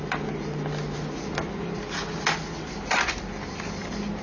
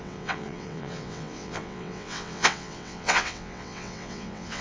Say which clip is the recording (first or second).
first